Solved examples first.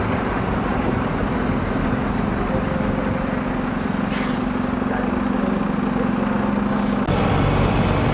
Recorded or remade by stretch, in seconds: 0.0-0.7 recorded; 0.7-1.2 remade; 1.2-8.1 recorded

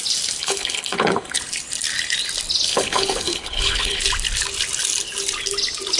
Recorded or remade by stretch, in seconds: 0.0-0.4 recorded; 0.4-1.4 remade; 1.4-2.7 recorded; 2.7-4.0 remade; 4.0-6.0 recorded